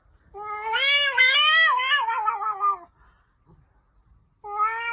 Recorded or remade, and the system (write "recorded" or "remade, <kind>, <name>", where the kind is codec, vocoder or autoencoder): recorded